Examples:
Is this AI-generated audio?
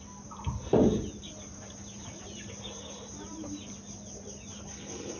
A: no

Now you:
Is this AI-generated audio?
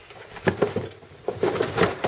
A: no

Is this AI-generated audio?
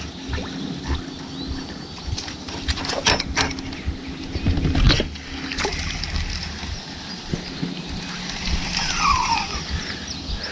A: no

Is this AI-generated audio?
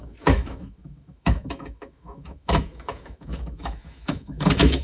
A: yes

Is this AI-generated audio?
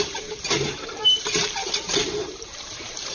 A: yes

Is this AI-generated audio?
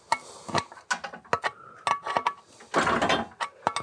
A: no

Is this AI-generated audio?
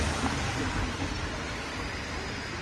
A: no